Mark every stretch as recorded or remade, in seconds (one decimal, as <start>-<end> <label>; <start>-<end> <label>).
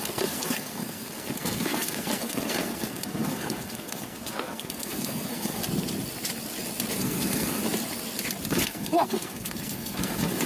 0.0-5.6 remade; 5.6-7.0 recorded; 7.0-7.6 remade; 7.6-8.5 recorded; 8.5-10.5 remade